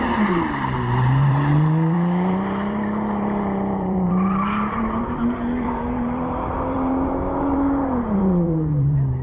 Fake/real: fake